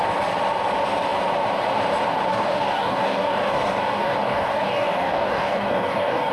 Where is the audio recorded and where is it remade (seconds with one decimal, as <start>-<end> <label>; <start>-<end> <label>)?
0.0-2.3 recorded; 2.3-6.3 remade